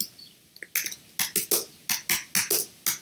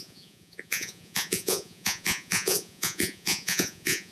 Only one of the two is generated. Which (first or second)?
second